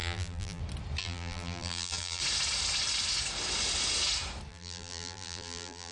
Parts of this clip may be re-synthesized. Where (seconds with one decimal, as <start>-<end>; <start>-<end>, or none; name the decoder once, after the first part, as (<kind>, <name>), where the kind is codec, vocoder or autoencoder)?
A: 0.0-0.6 (vocoder, BigVGAN v2); 1.0-2.2; 4.5-5.9